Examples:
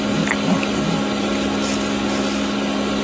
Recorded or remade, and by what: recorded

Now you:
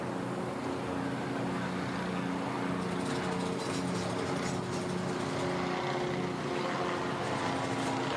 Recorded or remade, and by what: recorded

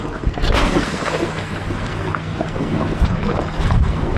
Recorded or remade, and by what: remade, codec, SNAC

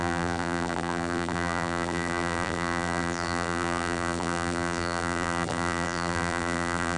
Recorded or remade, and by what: remade, vocoder, BigVGAN v2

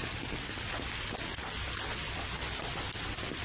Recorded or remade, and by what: recorded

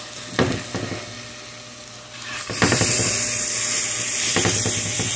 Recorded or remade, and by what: recorded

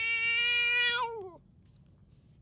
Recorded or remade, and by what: recorded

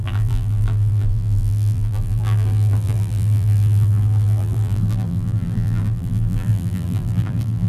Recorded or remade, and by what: remade, vocoder, BigVGAN v2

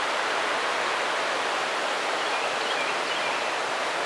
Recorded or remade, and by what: recorded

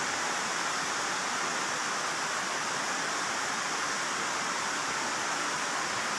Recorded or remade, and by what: recorded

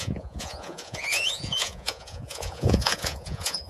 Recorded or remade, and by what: remade, vocoder, Vocos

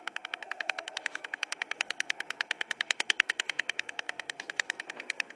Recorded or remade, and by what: remade, codec, SNAC